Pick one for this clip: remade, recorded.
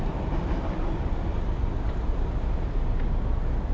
recorded